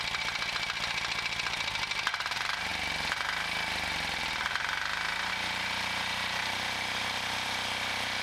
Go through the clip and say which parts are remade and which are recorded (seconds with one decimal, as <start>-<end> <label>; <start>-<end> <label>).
0.0-2.7 remade; 2.7-5.3 recorded; 5.3-8.2 remade